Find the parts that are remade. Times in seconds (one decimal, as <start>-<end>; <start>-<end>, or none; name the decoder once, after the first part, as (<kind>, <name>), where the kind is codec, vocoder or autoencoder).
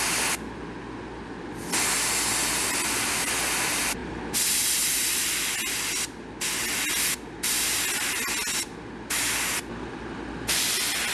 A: none